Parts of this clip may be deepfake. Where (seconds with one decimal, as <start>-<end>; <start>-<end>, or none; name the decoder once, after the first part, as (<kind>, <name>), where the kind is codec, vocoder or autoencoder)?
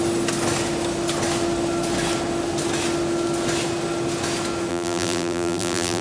4.7-6.0 (vocoder, BigVGAN v2)